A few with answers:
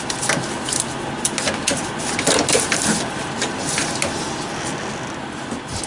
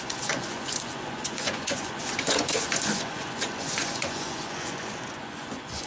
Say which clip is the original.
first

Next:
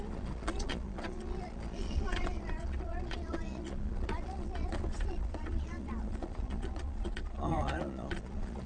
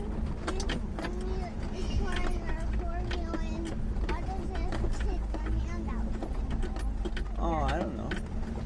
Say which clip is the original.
second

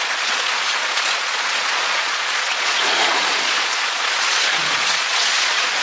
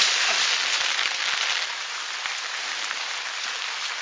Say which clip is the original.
second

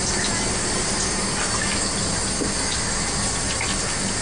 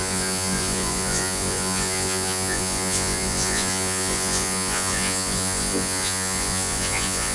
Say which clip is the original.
first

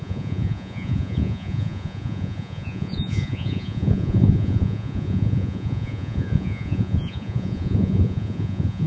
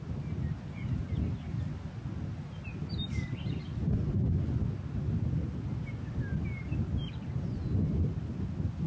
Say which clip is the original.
second